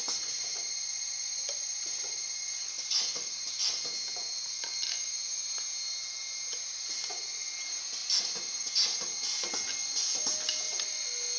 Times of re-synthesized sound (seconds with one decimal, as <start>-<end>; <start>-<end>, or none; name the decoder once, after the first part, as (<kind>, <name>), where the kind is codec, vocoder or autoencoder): none